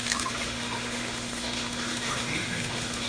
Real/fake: fake